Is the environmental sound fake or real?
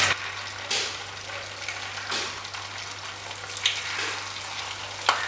real